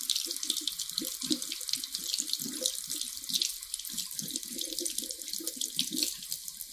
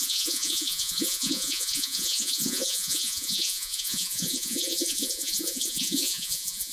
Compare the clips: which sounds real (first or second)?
first